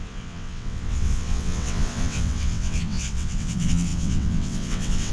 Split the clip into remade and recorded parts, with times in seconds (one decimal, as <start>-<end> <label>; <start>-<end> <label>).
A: 0.0-5.1 remade